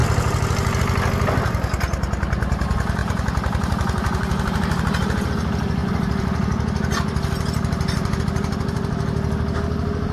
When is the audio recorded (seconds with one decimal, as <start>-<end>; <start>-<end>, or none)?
0.0-3.0; 5.3-5.8; 8.2-10.1